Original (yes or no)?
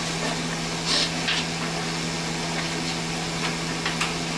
yes